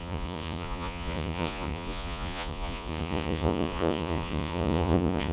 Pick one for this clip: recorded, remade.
remade